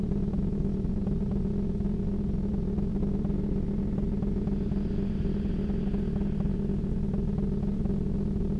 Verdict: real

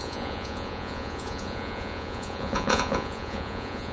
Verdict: fake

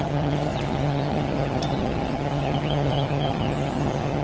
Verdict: fake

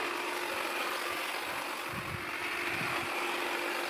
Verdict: real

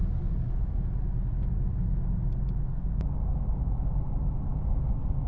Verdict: real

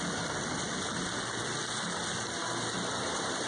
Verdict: real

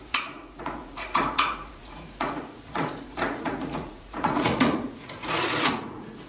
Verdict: fake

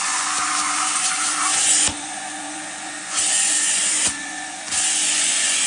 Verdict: fake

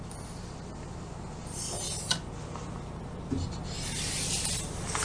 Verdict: real